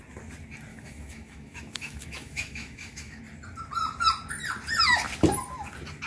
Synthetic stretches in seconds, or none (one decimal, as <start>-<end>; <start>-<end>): 0.7-3.2